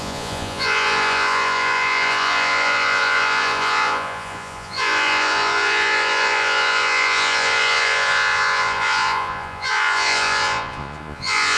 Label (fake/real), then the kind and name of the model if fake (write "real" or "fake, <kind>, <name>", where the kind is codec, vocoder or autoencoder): fake, vocoder, Vocos